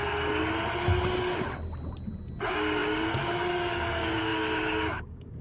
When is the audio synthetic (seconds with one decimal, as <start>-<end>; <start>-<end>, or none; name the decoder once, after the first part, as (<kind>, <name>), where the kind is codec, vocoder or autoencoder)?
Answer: 2.4-5.4 (codec, DAC)